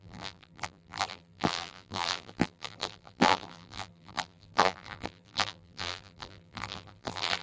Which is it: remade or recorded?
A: remade